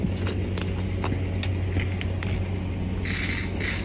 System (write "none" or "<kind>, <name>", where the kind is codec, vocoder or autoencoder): none